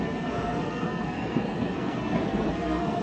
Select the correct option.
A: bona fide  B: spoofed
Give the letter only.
B